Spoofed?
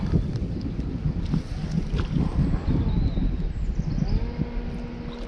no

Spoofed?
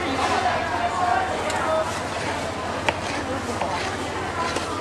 no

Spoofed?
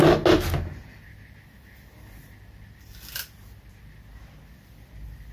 no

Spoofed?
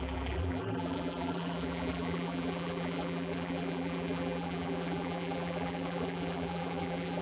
yes